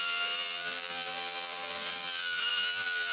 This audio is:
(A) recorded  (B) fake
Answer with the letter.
B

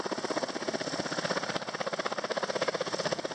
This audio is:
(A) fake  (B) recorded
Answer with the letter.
B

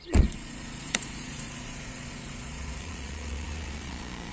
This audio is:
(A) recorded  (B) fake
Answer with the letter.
B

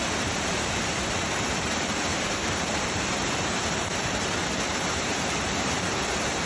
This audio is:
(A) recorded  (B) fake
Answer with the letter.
B